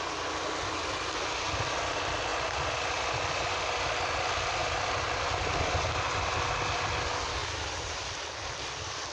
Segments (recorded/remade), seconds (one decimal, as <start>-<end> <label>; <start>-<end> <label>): 0.0-4.6 recorded; 4.6-5.9 remade; 5.9-7.4 recorded; 7.4-9.1 remade